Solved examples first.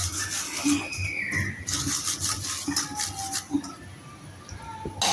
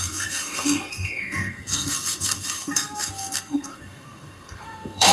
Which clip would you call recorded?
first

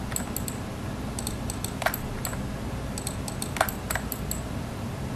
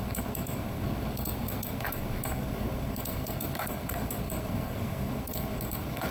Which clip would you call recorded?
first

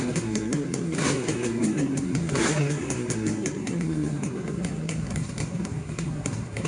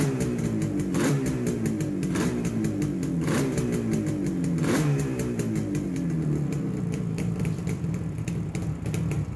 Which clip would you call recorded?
second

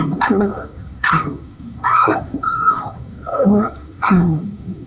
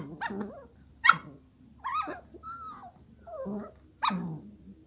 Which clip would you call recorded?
second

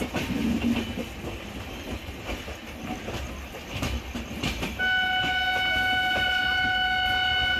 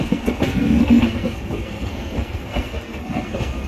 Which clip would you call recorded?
first